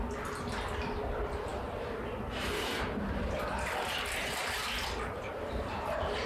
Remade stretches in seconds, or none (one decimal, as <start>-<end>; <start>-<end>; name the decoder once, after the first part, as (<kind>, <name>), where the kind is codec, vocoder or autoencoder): 1.5-5.3 (vocoder, BigVGAN v2)